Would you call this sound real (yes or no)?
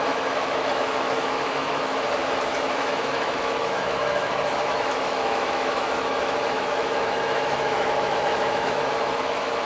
no